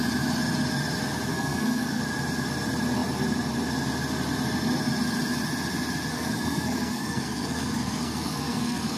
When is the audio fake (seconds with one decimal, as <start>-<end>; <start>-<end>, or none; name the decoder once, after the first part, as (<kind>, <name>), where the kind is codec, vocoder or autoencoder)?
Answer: 1.3-2.0 (codec, SNAC); 6.1-9.0

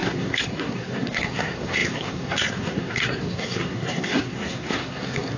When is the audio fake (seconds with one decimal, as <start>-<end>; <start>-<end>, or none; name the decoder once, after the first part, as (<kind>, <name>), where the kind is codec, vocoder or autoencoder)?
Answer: 0.0-5.4 (codec, SNAC)

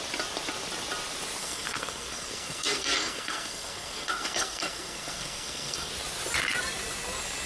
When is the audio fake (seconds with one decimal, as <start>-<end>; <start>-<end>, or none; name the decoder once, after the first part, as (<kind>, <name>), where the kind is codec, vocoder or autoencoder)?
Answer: 1.4-5.9 (codec, SNAC)